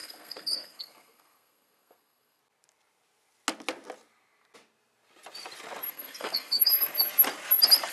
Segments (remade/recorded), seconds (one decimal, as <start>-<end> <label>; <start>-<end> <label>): 0.0-2.4 remade; 2.4-5.9 recorded; 5.9-6.7 remade; 6.7-7.9 recorded